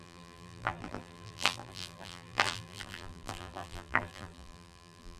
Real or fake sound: fake